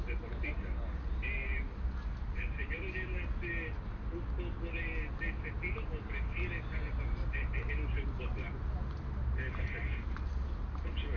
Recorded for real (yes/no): yes